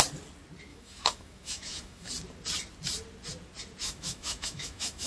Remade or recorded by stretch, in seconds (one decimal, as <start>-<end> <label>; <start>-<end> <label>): 0.0-0.7 recorded; 0.7-2.1 remade; 2.1-3.8 recorded; 3.8-5.1 remade